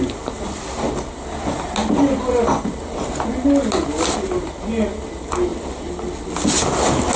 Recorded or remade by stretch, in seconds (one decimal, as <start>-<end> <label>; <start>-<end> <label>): 0.0-7.2 recorded